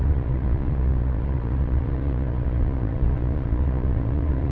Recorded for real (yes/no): no